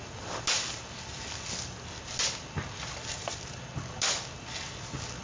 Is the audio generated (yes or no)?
no